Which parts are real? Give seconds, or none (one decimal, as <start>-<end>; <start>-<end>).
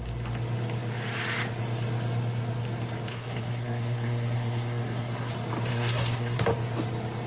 0.0-3.1; 5.3-5.7; 6.4-7.3